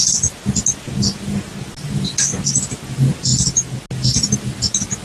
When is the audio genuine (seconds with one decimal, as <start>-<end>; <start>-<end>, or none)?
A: 0.0-5.0